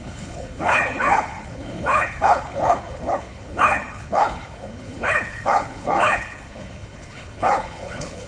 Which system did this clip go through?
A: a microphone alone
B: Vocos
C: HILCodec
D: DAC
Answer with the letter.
C